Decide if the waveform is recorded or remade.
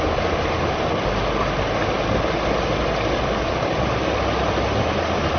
recorded